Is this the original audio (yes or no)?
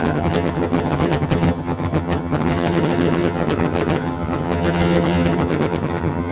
no